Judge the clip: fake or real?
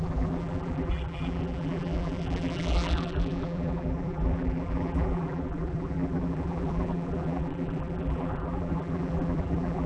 fake